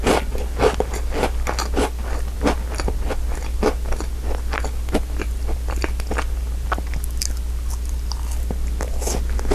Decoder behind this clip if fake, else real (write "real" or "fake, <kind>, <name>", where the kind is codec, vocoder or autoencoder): real